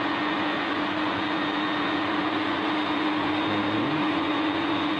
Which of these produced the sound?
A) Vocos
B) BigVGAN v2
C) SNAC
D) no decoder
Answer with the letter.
A